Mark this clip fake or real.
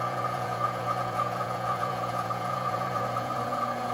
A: fake